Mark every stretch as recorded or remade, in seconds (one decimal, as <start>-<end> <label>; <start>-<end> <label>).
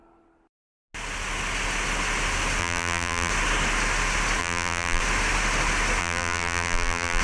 0.0-2.6 recorded; 2.6-3.3 remade; 3.3-4.4 recorded; 4.4-5.0 remade; 5.0-6.0 recorded; 6.0-7.2 remade